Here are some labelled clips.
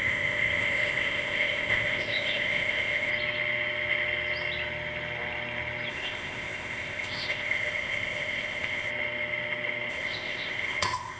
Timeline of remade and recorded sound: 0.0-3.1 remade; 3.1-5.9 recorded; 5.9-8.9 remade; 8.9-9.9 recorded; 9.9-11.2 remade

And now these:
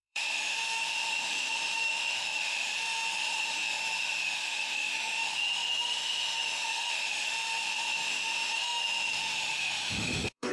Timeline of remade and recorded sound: 0.0-10.5 remade

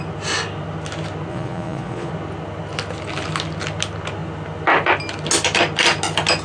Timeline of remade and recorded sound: 0.0-1.3 recorded; 1.3-2.1 remade; 2.1-6.4 recorded

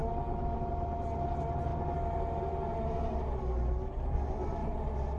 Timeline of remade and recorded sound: 0.0-5.2 recorded

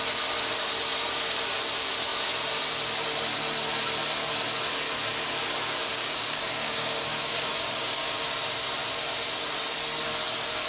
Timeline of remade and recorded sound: 0.0-6.0 recorded; 6.0-8.2 remade; 8.2-10.7 recorded